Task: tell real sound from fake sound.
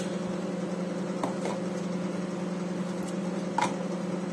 real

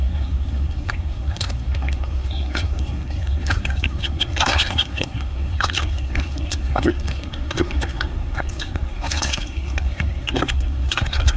fake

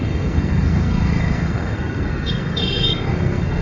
fake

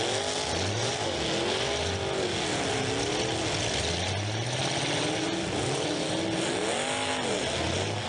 real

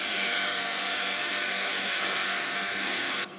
fake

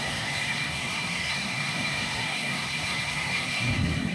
fake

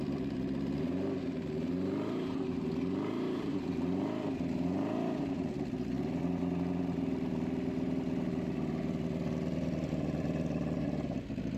real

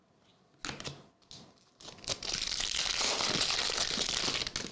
real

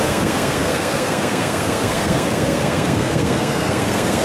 fake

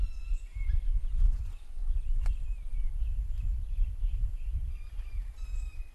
real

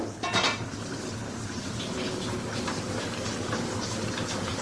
real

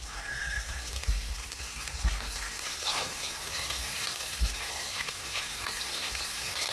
fake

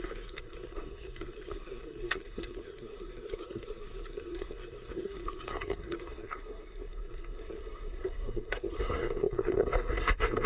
fake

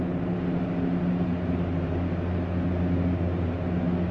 real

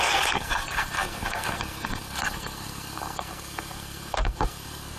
fake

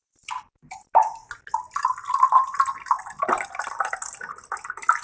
real